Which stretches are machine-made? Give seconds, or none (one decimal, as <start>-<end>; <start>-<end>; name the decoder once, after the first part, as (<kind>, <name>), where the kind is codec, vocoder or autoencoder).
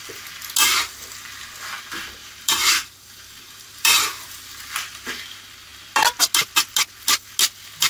2.2-4.3 (vocoder, BigVGAN v2)